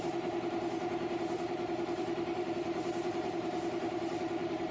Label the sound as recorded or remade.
remade